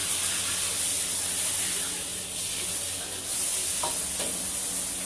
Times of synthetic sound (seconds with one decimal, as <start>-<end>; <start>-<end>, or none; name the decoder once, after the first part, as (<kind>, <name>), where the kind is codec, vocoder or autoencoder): none